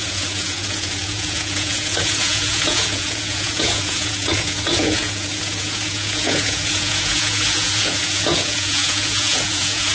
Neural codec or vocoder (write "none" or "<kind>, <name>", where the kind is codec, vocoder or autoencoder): vocoder, Vocos